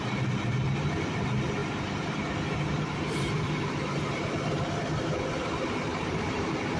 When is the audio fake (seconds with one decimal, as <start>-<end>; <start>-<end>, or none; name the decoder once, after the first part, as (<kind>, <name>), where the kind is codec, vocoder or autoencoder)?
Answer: 1.6-4.5 (vocoder, BigVGAN v2); 5.9-6.8

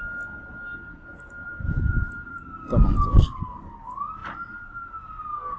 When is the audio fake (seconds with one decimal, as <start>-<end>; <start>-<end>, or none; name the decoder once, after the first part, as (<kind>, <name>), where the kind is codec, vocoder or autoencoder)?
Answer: 1.1-3.8 (vocoder, BigVGAN v2)